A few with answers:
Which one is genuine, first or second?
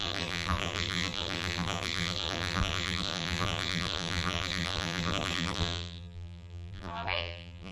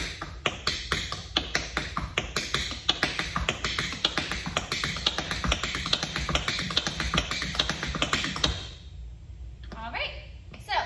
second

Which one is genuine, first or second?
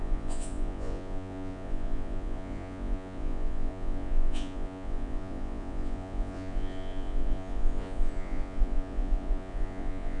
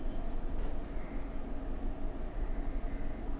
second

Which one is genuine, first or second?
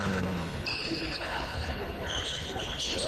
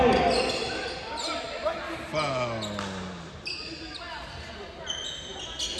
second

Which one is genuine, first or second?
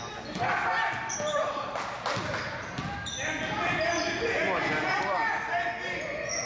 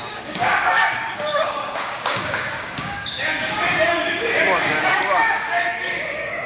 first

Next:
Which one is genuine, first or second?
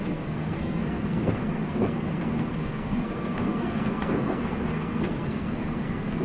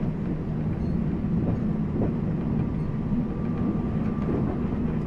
second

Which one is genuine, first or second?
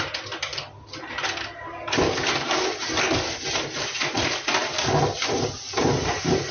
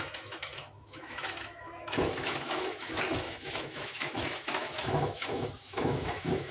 first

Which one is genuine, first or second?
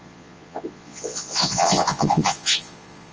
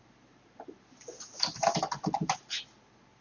second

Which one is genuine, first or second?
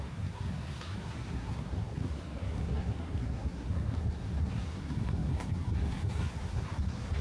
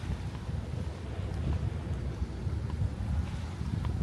second